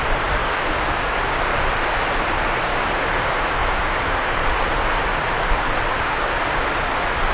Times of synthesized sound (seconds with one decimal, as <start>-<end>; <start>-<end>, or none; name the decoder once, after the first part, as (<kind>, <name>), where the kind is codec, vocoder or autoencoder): 0.4-1.6 (codec, DAC); 2.7-4.6; 5.9-6.4